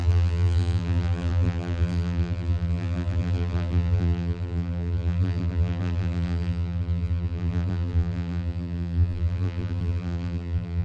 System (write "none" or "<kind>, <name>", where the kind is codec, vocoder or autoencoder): vocoder, BigVGAN v2